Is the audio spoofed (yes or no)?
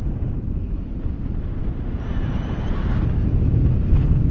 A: no